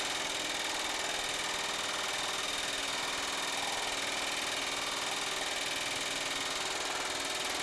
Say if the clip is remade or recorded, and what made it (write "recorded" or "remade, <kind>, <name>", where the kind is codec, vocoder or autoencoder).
recorded